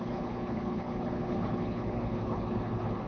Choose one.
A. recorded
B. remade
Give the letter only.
B